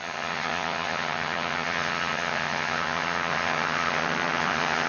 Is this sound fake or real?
fake